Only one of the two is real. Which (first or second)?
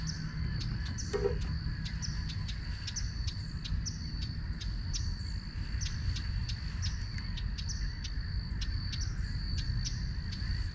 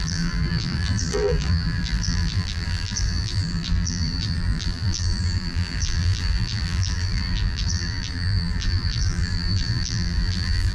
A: first